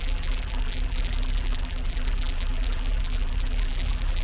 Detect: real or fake fake